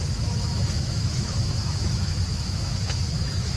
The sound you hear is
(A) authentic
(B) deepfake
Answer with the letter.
B